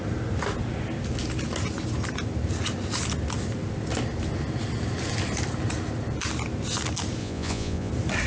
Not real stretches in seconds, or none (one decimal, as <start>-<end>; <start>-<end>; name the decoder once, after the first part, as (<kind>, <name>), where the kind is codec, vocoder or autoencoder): 7.2-7.9 (vocoder, Vocos)

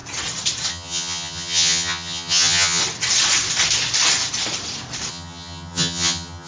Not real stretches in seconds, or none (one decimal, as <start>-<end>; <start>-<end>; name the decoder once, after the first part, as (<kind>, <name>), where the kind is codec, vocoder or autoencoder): 0.7-2.8 (vocoder, HiFi-GAN); 5.1-6.5

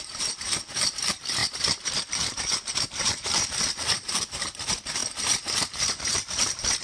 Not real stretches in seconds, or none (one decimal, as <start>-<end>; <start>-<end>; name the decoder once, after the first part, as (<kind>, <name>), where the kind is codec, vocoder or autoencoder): 0.0-5.0 (vocoder, BigVGAN v2); 5.8-6.8

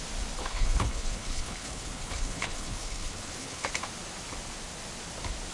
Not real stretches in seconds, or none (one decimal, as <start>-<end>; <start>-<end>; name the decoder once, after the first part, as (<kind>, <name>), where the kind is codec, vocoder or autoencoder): 0.4-3.7 (codec, HILCodec)

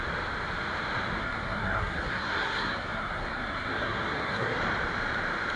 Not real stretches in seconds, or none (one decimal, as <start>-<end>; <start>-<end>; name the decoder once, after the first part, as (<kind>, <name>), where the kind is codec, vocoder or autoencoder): 1.2-4.6 (codec, SNAC)

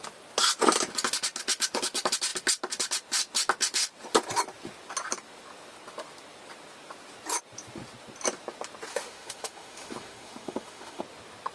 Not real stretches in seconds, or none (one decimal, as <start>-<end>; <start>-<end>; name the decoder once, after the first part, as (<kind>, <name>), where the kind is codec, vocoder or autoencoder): 8.9-11.0 (autoencoder, DAC-VAE)